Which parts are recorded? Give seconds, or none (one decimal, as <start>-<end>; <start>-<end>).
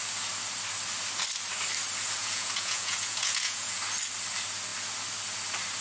0.0-2.2; 3.8-5.8